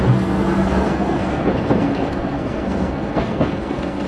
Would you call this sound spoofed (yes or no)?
yes